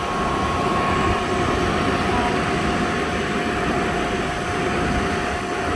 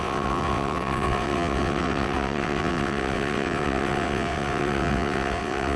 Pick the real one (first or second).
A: first